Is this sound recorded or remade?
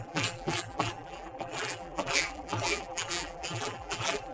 remade